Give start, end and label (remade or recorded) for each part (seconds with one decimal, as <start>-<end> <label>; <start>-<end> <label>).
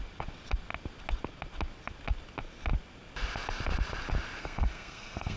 0.0-4.4 recorded; 4.4-5.4 remade